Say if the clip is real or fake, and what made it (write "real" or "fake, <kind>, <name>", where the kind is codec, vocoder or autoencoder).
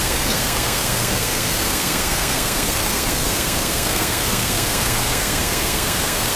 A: fake, codec, SNAC